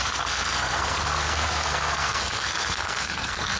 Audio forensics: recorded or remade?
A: remade